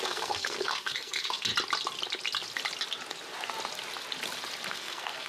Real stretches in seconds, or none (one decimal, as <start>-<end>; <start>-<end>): 1.5-4.7